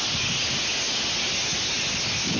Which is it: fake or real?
real